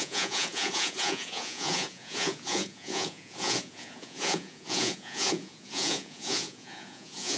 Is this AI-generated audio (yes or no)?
yes